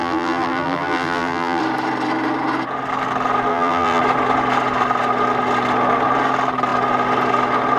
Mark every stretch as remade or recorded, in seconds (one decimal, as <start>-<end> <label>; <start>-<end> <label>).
0.0-1.6 remade; 1.6-3.5 recorded; 3.5-4.0 remade; 4.0-7.8 recorded